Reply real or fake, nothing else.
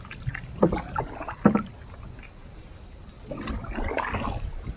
real